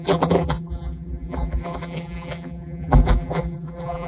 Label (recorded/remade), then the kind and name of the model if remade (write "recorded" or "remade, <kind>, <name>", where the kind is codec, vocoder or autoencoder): remade, vocoder, BigVGAN v2